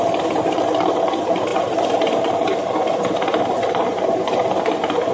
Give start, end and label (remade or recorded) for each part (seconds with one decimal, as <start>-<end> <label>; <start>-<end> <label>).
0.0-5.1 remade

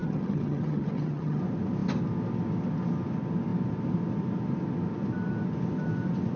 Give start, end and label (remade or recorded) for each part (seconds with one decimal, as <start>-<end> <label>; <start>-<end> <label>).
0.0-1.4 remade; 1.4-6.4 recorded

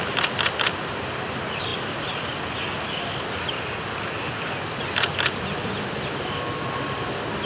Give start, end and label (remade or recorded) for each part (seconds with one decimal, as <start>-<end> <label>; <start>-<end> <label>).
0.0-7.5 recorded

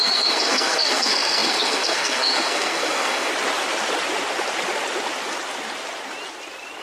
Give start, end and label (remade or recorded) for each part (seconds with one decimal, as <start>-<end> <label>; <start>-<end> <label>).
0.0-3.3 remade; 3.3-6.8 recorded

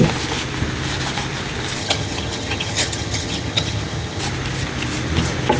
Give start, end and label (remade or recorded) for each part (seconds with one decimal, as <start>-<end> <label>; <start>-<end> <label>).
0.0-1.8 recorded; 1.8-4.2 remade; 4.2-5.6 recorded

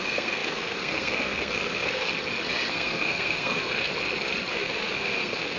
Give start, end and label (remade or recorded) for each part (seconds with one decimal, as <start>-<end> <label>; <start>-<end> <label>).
0.0-2.1 remade; 2.1-2.7 recorded; 2.7-3.9 remade; 3.9-4.5 recorded; 4.5-5.6 remade

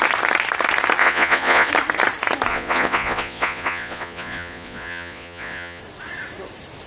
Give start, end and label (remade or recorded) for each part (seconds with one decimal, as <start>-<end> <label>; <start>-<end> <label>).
0.0-1.0 recorded; 1.0-1.7 remade; 1.7-2.5 recorded; 2.5-5.8 remade; 5.8-6.9 recorded